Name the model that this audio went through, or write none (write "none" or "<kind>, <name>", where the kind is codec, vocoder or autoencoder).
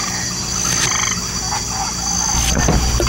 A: none